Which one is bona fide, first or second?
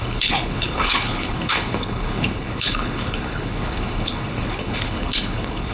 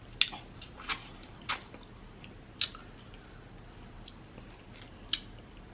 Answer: second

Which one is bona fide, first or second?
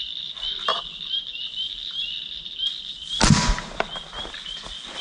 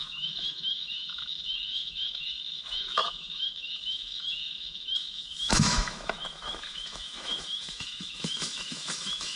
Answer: first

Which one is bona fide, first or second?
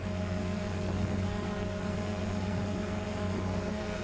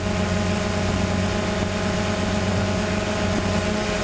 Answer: second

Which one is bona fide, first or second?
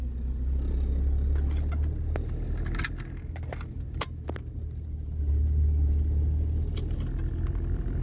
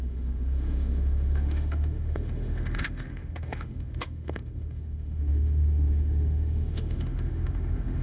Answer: first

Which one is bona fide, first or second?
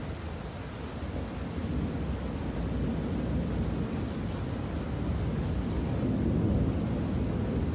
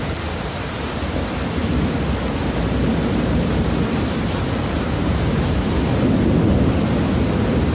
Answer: first